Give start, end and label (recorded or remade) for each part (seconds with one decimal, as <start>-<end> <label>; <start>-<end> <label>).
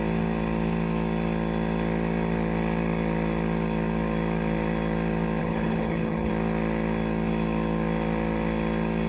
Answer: 0.0-5.4 recorded; 5.4-6.3 remade; 6.3-9.1 recorded